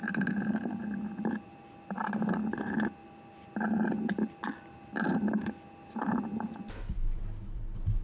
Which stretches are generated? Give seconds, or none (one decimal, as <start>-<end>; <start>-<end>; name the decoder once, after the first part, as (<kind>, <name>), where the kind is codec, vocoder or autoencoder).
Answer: none